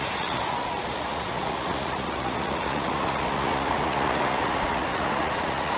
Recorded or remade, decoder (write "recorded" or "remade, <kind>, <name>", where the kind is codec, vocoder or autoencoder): remade, vocoder, Vocos